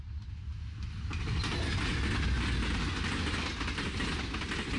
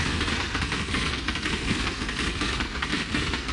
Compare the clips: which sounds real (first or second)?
first